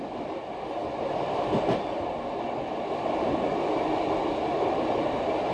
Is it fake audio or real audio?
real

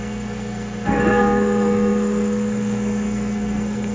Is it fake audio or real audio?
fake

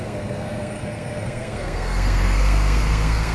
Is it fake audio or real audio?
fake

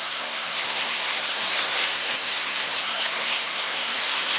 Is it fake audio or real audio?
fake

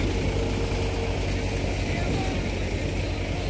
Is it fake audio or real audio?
real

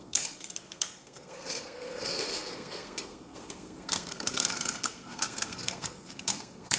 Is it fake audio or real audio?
fake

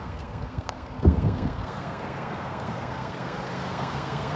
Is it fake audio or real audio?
fake